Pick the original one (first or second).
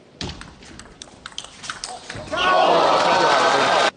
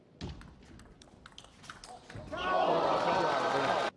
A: second